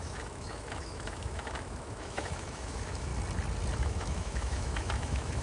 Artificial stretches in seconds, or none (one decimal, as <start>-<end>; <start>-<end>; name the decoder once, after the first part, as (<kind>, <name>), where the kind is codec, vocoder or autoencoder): 0.0-3.1 (autoencoder, DAC-VAE); 3.8-5.4